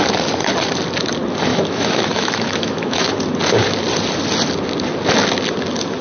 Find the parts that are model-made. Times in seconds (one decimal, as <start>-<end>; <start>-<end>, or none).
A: 1.5-3.1

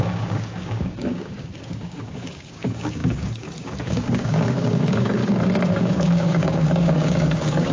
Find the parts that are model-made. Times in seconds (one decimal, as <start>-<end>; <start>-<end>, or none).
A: 0.0-5.2; 5.7-7.7

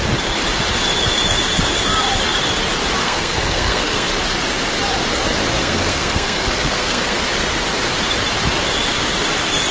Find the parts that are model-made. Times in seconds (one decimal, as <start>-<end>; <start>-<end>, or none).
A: 3.0-4.1; 5.6-7.2

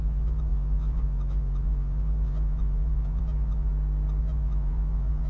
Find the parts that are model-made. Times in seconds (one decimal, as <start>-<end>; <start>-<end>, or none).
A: 0.0-3.7; 4.2-5.3